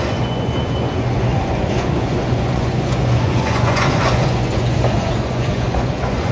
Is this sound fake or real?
fake